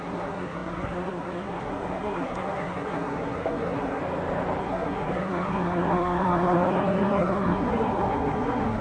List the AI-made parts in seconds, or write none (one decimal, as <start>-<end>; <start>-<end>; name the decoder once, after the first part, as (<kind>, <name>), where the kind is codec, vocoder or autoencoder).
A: 0.0-4.0 (codec, SNAC); 4.6-8.8